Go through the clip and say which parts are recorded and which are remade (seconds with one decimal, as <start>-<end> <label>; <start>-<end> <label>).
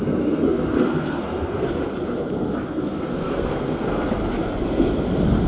0.0-1.7 remade; 1.7-2.7 recorded; 2.7-4.2 remade; 4.2-5.5 recorded